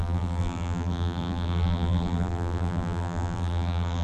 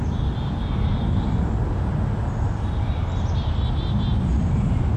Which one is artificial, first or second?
first